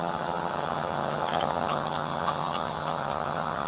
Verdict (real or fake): fake